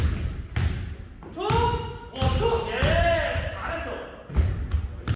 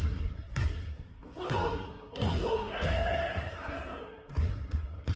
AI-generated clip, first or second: second